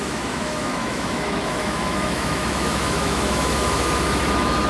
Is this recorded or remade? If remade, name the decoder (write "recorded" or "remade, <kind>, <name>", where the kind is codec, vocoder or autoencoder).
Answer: remade, autoencoder, DAC-VAE